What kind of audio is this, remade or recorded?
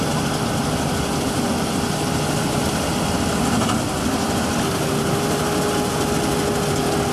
recorded